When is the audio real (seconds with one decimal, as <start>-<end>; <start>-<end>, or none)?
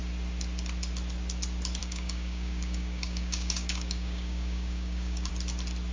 0.0-1.8; 5.3-5.9